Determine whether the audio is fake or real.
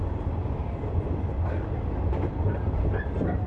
real